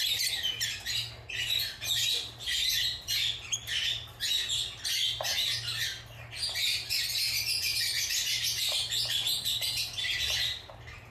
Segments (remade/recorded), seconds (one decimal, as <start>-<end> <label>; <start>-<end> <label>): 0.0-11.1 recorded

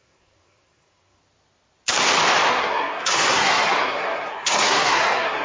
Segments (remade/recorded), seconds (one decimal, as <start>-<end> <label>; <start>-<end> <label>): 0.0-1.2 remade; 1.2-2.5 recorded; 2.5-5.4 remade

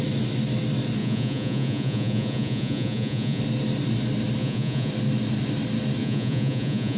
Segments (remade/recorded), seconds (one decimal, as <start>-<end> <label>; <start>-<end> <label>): 0.0-1.0 recorded; 1.0-3.4 remade; 3.4-4.4 recorded; 4.4-4.9 remade; 4.9-6.0 recorded; 6.0-7.0 remade

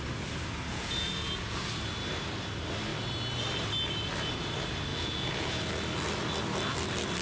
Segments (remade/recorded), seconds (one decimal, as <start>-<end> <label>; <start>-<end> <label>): 0.0-0.7 recorded; 0.7-1.6 remade; 1.6-4.9 recorded; 4.9-5.7 remade; 5.7-7.2 recorded

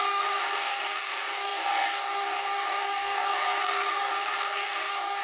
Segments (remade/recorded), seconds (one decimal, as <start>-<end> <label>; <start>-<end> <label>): 0.0-5.2 remade

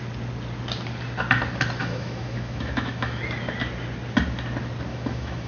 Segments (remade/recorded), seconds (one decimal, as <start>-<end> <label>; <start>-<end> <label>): 0.0-1.8 recorded; 1.8-3.2 remade; 3.2-4.9 recorded; 4.9-5.5 remade